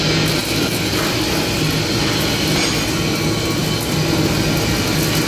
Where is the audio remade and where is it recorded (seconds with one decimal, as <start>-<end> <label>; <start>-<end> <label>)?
0.0-5.3 recorded